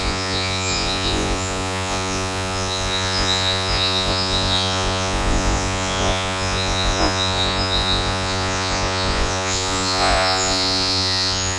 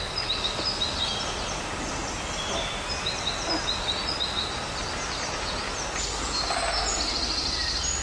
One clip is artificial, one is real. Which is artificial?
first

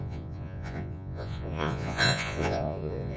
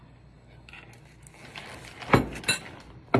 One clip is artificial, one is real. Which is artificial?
first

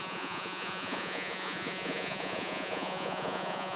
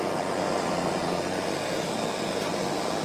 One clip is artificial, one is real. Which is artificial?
first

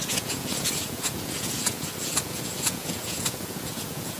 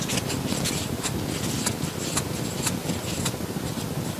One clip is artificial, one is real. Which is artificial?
first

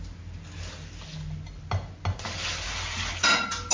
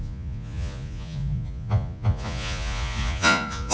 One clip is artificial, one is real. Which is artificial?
second